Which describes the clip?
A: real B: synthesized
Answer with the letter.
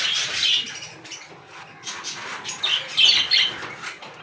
A